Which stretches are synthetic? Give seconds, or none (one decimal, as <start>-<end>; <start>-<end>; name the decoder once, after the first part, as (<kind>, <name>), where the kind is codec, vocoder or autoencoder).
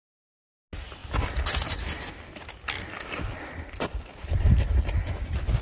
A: none